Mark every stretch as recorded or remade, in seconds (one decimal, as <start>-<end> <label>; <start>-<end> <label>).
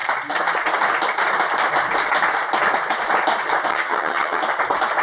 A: 0.0-3.7 recorded; 3.7-4.4 remade; 4.4-5.0 recorded